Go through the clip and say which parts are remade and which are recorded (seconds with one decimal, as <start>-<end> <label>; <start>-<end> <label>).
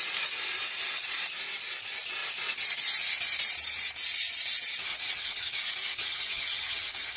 0.0-4.9 recorded; 4.9-5.5 remade; 5.5-5.9 recorded; 5.9-7.2 remade